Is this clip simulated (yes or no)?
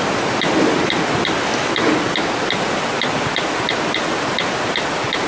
no